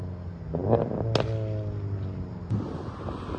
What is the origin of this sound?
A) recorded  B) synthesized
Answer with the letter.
A